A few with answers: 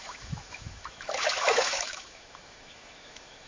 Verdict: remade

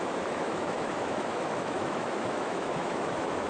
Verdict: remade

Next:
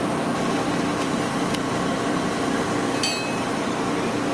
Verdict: recorded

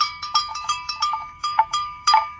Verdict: remade